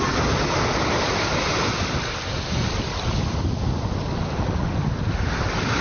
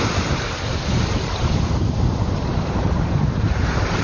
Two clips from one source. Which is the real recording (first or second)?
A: first